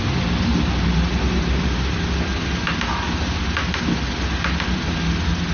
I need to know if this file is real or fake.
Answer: real